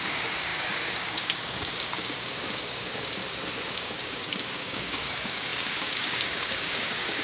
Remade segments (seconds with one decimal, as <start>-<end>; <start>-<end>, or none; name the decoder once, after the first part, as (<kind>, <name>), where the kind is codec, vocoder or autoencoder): 0.0-3.2 (codec, DAC); 3.7-7.2